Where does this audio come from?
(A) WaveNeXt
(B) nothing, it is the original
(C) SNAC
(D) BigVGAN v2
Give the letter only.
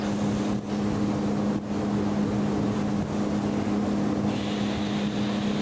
B